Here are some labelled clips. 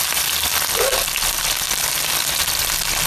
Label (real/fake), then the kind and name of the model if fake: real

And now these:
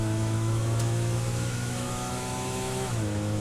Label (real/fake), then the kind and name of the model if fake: fake, autoencoder, DAC-VAE